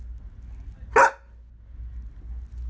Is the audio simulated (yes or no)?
no